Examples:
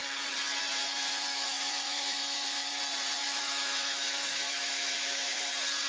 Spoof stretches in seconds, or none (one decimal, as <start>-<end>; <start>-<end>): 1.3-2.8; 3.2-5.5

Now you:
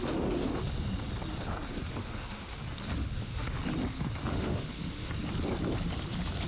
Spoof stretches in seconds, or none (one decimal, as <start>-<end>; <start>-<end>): 2.0-2.6; 3.0-3.6; 4.3-5.1

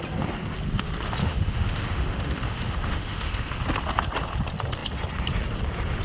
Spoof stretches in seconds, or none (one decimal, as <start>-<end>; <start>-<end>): 1.2-3.6

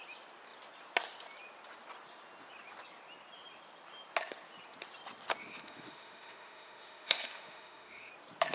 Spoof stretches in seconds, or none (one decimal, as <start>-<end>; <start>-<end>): 5.4-8.1

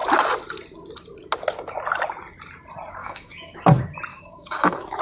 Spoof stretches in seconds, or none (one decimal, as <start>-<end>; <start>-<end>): 3.0-3.6; 4.1-5.0

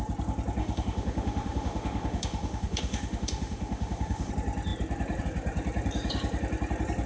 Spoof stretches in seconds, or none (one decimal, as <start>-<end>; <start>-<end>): 0.6-4.3

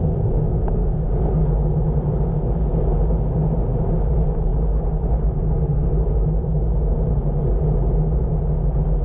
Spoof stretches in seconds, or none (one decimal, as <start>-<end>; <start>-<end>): none